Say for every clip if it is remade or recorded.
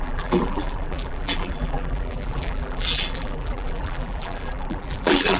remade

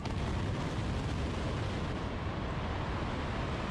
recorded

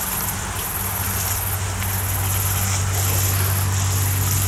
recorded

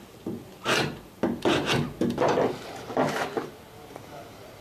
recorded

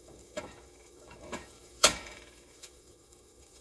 remade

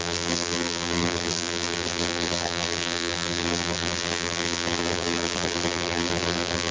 remade